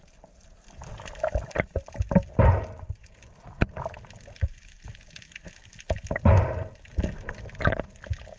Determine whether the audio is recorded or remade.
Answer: recorded